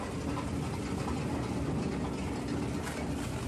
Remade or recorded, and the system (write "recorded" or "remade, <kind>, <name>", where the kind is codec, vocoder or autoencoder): recorded